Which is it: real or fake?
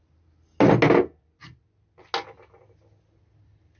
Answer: real